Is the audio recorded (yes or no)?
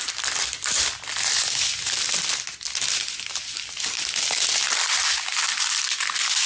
yes